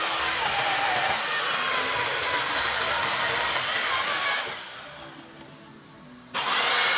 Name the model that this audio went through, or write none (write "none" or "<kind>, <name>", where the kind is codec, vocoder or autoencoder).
none